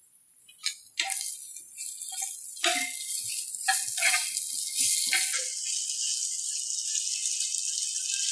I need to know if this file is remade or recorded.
recorded